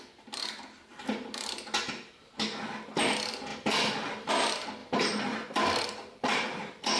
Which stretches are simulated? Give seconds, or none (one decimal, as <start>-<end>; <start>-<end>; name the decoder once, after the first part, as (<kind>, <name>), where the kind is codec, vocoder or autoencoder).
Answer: 4.8-7.0 (vocoder, BigVGAN v2)